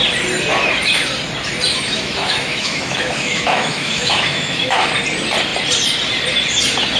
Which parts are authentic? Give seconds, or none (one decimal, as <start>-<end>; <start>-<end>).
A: 0.0-1.7; 4.9-7.0